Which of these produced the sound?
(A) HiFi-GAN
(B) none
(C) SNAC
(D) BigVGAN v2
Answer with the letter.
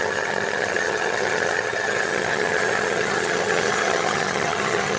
A